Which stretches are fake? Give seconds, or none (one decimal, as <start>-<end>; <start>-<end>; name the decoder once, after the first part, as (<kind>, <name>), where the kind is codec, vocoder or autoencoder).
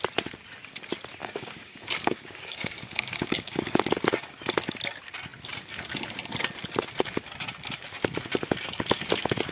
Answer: 1.2-3.8 (codec, DAC)